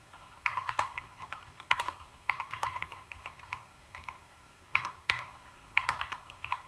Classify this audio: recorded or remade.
remade